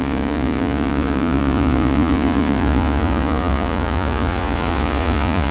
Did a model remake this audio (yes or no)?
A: yes